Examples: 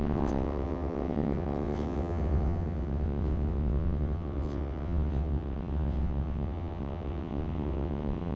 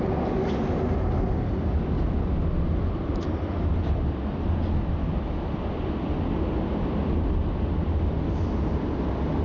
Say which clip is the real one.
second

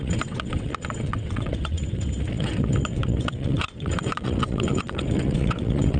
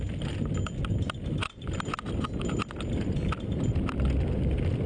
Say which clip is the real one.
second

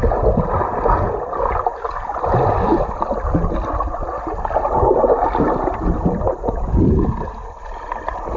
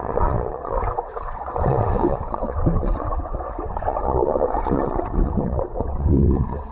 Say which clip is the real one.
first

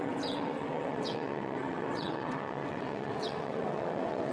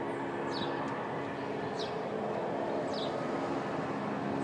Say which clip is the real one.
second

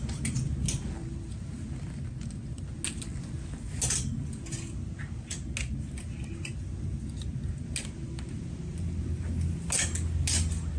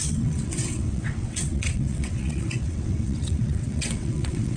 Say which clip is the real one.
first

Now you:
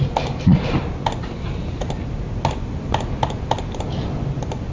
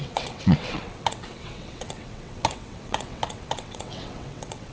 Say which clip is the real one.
first